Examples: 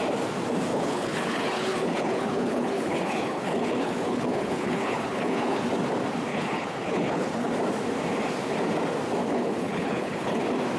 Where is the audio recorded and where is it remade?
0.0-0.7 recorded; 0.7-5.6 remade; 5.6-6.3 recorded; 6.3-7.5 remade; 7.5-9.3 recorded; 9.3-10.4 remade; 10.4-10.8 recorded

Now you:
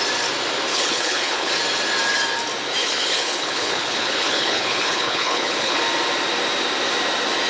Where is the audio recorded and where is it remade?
0.0-0.7 recorded; 0.7-1.5 remade; 1.5-2.8 recorded; 2.8-5.8 remade; 5.8-7.5 recorded

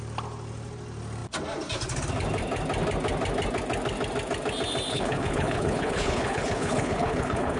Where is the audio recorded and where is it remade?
0.0-4.9 recorded; 4.9-7.6 remade

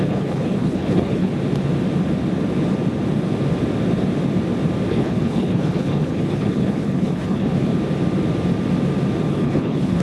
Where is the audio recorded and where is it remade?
0.0-1.3 remade; 1.3-4.9 recorded; 4.9-7.7 remade; 7.7-9.3 recorded; 9.3-10.0 remade

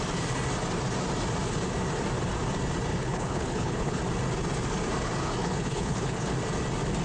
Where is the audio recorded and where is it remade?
0.0-2.9 recorded; 2.9-4.0 remade; 4.0-5.4 recorded; 5.4-6.3 remade; 6.3-7.0 recorded

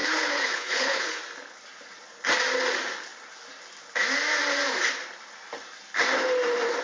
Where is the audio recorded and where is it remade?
0.0-1.2 remade; 1.2-6.8 recorded

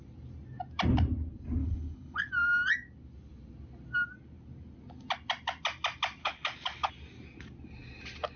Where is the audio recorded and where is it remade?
0.0-1.6 recorded; 1.6-2.3 remade; 2.3-6.2 recorded; 6.2-6.9 remade; 6.9-8.4 recorded

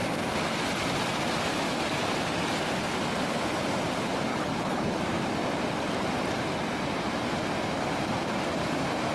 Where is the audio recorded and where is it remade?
0.0-4.3 recorded; 4.3-5.0 remade; 5.0-9.1 recorded